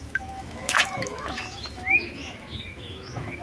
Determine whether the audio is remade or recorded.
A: remade